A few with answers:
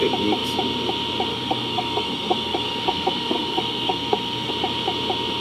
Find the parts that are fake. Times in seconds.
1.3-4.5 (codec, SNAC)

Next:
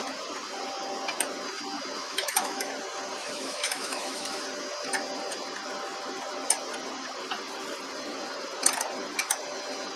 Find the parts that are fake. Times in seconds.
2.0-2.7 (autoencoder, DAC-VAE); 3.2-4.4